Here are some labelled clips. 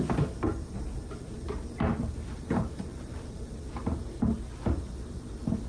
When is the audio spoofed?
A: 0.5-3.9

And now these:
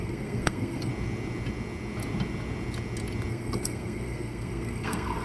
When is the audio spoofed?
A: 0.0-0.9; 3.3-5.2

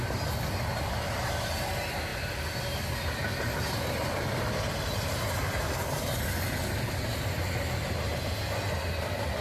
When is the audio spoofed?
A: 2.1-3.8

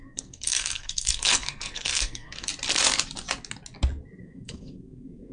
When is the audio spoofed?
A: 0.0-2.5; 4.2-5.3